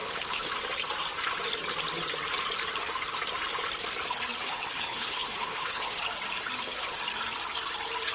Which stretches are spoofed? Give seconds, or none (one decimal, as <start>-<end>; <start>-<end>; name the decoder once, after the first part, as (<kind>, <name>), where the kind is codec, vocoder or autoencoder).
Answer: 0.0-0.5 (codec, HILCodec); 4.4-6.0